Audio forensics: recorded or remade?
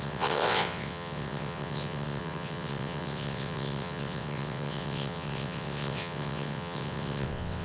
remade